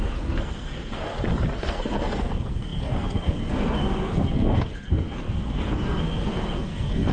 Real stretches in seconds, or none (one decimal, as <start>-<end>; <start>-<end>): 1.1-1.6

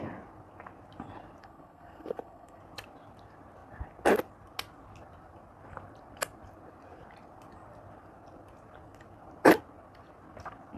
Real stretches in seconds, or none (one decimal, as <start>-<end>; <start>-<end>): 0.0-1.4; 2.6-10.8

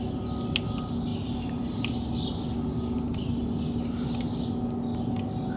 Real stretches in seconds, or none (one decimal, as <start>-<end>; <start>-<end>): 0.0-5.6